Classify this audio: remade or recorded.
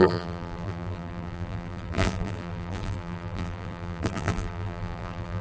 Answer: remade